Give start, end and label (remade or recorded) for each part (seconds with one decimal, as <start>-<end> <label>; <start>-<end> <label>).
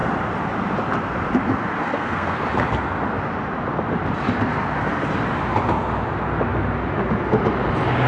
0.0-1.8 recorded; 1.8-2.4 remade; 2.4-8.1 recorded